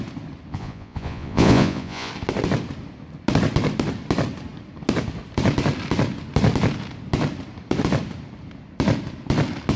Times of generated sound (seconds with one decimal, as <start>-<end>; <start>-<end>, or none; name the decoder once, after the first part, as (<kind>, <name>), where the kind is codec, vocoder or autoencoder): 0.5-2.1 (vocoder, Vocos)